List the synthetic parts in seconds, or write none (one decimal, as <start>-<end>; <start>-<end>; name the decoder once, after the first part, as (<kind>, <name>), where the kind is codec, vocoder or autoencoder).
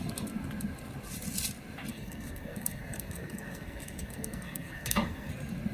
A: 1.9-5.3 (codec, SNAC)